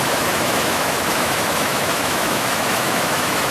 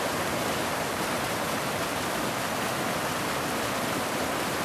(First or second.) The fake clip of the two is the first